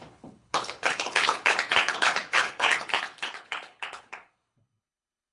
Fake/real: fake